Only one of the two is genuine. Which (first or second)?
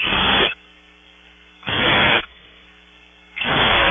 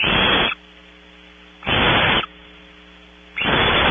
second